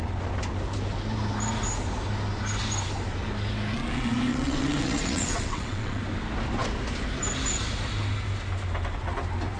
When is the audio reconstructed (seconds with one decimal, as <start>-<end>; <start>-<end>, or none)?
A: 4.3-6.0